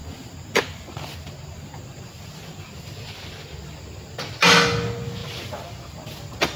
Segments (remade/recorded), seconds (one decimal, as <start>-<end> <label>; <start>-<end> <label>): 0.0-5.2 recorded; 5.2-5.9 remade; 5.9-6.6 recorded